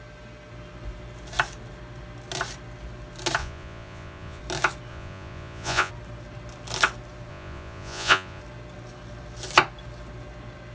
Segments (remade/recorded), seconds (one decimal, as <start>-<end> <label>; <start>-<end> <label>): 0.0-3.4 recorded; 3.4-4.4 remade; 4.4-4.9 recorded; 4.9-5.9 remade; 5.9-7.3 recorded; 7.3-8.4 remade; 8.4-10.7 recorded